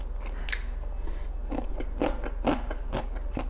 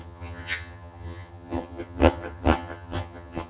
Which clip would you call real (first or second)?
first